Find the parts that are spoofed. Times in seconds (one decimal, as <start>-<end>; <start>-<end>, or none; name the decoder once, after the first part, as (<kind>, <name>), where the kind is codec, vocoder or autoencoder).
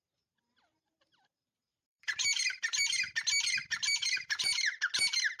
1.6-3.1 (vocoder, BigVGAN v2); 3.7-4.6